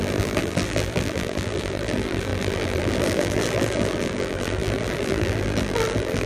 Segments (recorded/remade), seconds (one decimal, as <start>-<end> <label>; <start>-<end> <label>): 0.0-6.3 remade